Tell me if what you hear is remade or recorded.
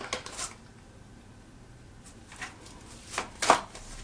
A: recorded